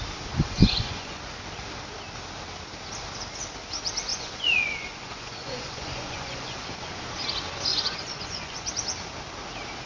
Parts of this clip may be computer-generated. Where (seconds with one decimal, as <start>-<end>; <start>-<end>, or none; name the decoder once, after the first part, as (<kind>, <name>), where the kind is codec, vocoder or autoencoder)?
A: 0.4-1.2 (vocoder, Vocos); 4.1-7.0; 7.7-8.7